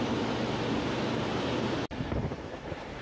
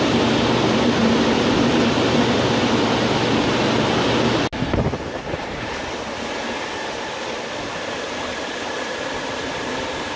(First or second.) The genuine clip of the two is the second